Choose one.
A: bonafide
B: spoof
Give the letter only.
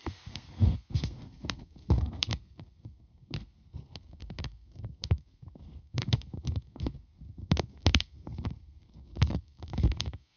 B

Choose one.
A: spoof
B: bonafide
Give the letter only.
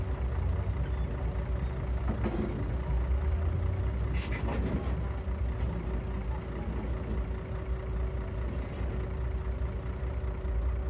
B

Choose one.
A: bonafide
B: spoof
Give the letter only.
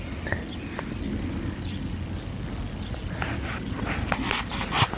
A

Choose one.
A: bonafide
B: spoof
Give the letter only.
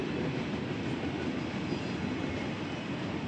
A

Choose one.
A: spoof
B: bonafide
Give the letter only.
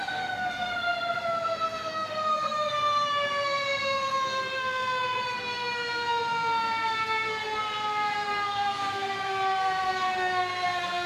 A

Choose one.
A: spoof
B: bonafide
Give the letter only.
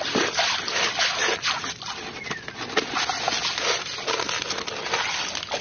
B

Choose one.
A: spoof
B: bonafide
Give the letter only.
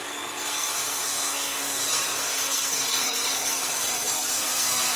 A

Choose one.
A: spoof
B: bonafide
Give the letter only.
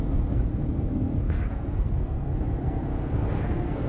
A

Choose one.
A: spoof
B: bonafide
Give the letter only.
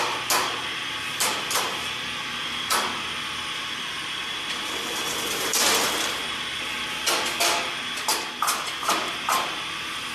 B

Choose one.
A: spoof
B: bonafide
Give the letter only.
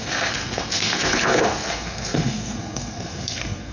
A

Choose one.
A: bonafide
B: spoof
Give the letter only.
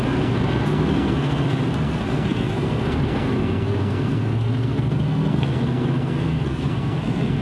B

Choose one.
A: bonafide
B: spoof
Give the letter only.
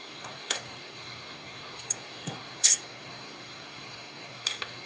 B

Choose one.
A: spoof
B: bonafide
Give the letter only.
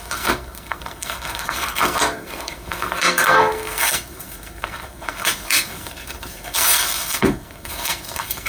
A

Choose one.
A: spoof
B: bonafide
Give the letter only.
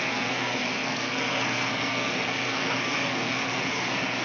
A